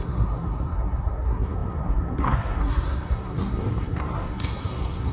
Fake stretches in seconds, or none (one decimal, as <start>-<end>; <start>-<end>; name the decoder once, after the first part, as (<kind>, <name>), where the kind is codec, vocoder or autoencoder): 0.0-5.1 (codec, SNAC)